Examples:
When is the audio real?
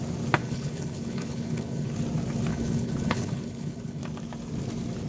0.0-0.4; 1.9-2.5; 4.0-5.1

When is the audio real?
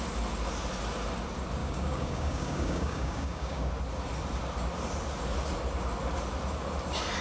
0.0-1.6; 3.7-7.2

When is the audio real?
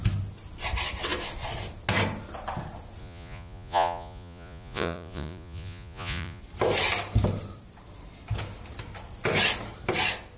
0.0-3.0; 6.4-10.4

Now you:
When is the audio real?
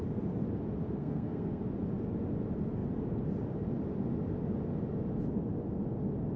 0.0-1.0; 1.6-6.4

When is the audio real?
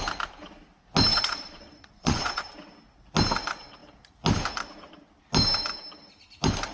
0.0-1.1; 2.4-6.7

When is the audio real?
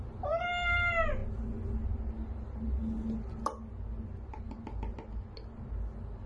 0.0-6.3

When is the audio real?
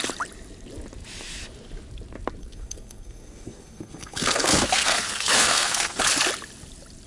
0.0-2.4; 6.0-7.1